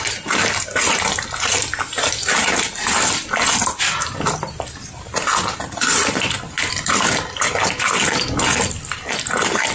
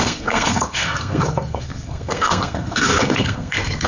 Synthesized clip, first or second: second